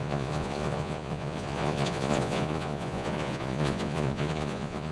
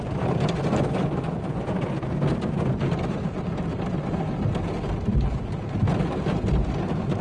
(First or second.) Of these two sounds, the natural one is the second